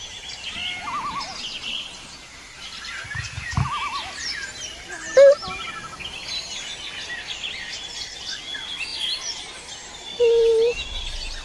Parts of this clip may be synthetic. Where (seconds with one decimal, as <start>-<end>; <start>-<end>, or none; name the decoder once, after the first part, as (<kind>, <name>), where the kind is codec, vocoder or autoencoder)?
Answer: none